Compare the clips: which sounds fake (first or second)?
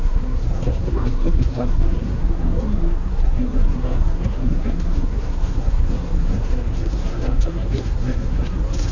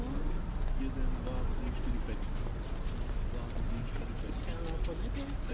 first